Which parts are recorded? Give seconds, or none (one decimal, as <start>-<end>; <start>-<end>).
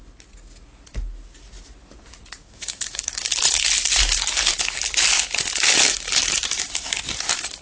0.0-2.4; 3.1-5.7; 6.9-7.6